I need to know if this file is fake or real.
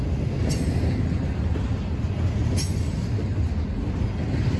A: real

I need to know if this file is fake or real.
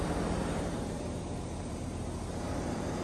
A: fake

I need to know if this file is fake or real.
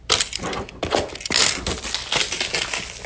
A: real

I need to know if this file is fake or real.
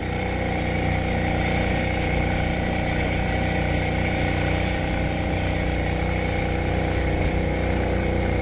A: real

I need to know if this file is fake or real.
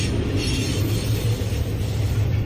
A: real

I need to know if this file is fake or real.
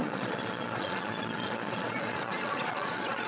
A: fake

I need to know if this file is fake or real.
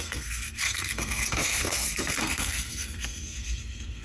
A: fake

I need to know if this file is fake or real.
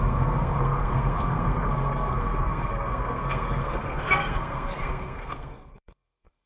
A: fake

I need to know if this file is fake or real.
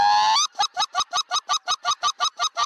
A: real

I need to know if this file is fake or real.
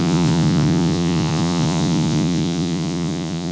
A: fake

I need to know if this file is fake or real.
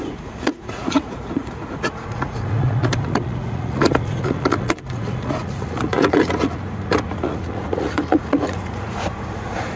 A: fake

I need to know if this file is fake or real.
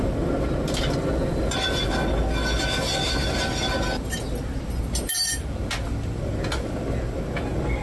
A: real